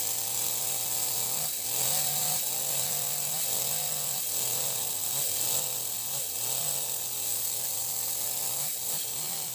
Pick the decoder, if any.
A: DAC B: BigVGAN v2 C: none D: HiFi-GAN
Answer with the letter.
C